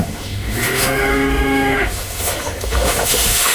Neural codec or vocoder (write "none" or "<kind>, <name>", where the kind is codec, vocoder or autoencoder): autoencoder, DAC-VAE